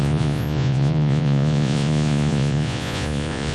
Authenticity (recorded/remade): remade